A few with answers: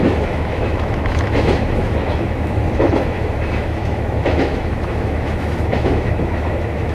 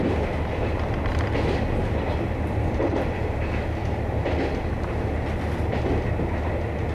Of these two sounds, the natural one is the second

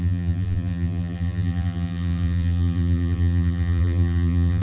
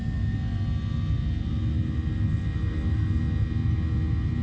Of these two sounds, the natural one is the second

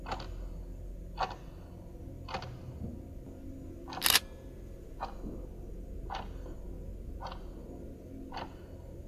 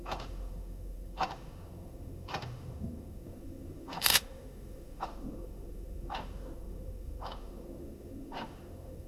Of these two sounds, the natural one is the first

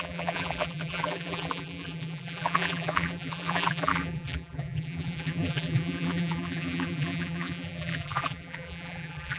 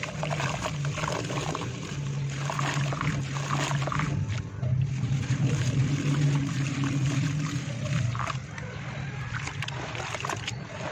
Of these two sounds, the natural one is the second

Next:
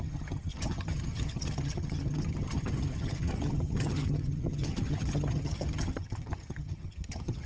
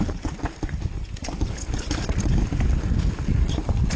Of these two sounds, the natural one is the second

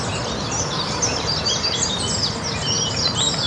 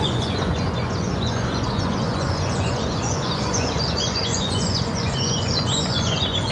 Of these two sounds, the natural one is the first